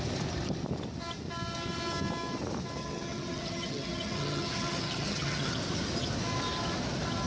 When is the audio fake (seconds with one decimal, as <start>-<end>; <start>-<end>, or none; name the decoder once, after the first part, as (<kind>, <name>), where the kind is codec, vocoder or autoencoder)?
2.8-5.6 (vocoder, HiFi-GAN)